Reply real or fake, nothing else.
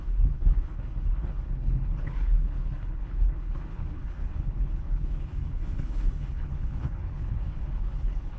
fake